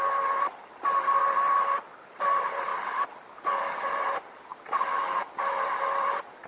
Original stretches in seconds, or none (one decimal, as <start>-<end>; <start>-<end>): 1.2-2.2; 2.7-3.6; 4.5-5.7

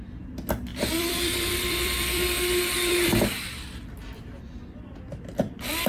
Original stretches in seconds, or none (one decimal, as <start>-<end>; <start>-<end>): 0.0-0.7; 4.2-5.9

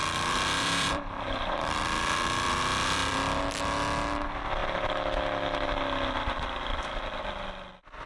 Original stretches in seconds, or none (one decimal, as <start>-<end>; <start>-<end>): 3.4-8.1

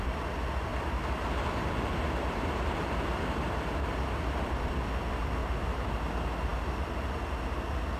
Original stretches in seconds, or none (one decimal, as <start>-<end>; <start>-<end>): 0.0-0.7; 4.5-5.4; 6.1-8.0

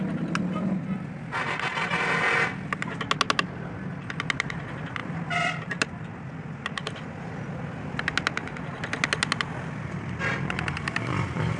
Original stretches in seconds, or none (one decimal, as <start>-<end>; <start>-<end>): 0.0-5.0; 6.1-11.6

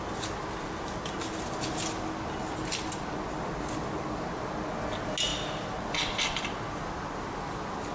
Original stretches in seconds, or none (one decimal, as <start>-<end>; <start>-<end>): 0.0-5.3; 6.5-7.9

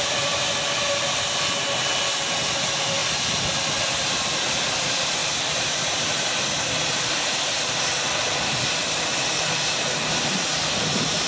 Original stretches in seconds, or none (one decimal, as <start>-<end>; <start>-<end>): 0.0-5.2; 7.8-8.8; 9.8-11.3

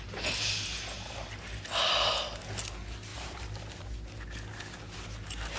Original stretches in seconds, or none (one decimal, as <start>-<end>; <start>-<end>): 0.0-3.1; 3.9-5.6